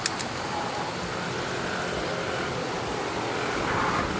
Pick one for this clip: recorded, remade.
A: recorded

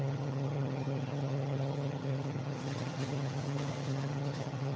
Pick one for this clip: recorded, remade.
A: remade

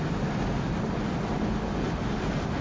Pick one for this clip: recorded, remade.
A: recorded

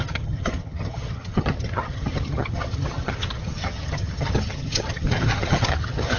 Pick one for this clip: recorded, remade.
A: remade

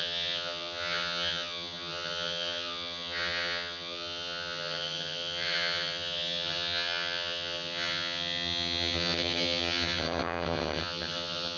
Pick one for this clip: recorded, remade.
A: remade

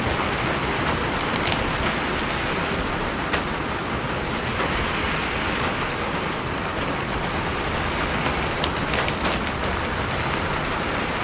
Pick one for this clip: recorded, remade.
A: recorded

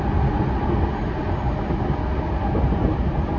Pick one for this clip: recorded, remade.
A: recorded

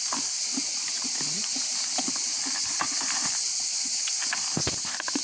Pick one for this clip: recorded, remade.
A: recorded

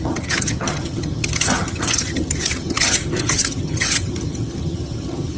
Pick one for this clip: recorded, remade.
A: remade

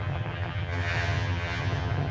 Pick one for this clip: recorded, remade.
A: remade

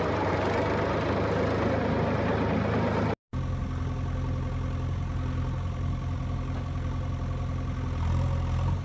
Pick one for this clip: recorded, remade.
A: recorded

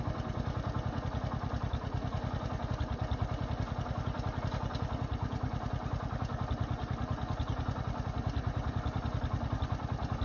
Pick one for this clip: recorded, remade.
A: recorded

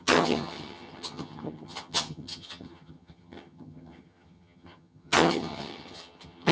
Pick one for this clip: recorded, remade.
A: remade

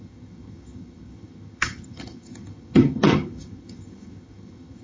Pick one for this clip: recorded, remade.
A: remade